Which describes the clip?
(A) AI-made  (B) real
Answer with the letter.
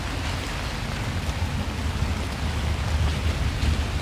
B